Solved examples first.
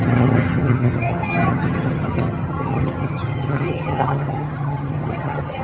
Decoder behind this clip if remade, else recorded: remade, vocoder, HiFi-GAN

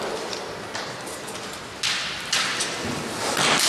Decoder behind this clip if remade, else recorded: recorded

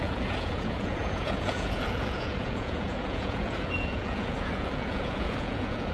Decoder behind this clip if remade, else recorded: remade, vocoder, Vocos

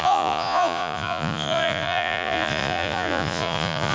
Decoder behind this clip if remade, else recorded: remade, vocoder, Vocos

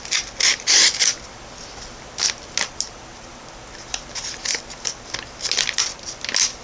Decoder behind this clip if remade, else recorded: recorded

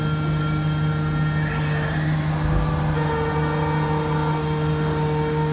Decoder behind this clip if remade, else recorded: recorded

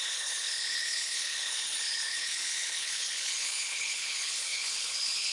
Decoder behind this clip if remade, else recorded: remade, codec, HILCodec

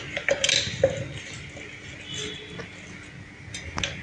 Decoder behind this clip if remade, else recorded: recorded